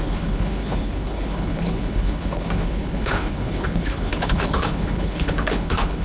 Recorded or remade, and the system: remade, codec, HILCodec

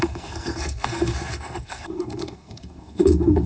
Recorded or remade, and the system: remade, codec, SNAC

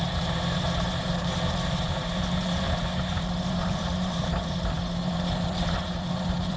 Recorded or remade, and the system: remade, vocoder, BigVGAN v2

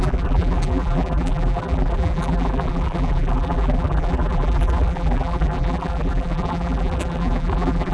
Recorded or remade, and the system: remade, vocoder, BigVGAN v2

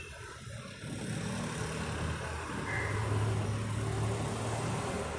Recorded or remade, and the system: recorded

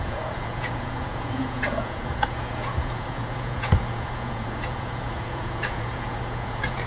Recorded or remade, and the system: remade, vocoder, Vocos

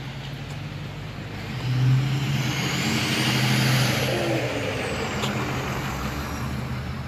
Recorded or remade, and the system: recorded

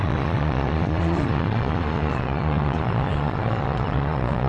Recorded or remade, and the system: remade, vocoder, Vocos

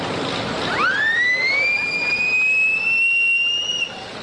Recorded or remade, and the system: recorded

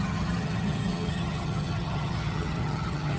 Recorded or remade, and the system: remade, vocoder, HiFi-GAN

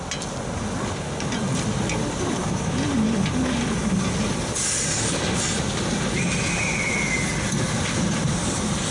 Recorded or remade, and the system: recorded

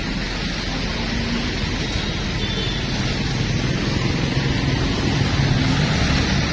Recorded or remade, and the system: recorded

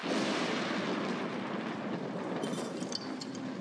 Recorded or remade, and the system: recorded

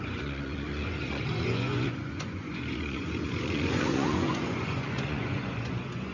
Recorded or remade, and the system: remade, vocoder, Vocos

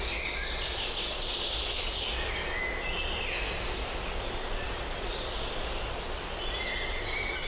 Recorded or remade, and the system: recorded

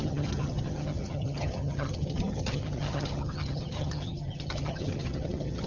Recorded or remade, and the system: remade, vocoder, HiFi-GAN